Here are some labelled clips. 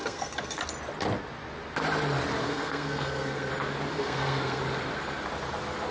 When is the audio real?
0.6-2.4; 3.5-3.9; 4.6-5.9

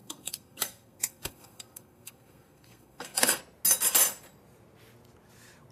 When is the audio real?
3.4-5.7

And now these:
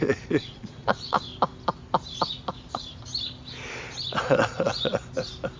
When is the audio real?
1.3-4.2; 5.0-5.6